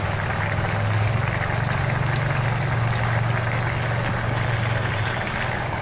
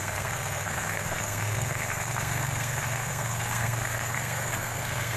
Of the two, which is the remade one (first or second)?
second